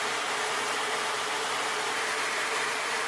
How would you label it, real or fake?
real